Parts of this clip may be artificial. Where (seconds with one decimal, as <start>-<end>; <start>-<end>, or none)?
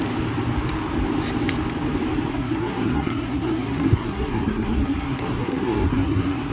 2.3-6.5